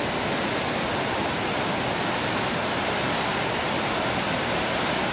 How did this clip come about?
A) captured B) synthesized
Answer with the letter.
A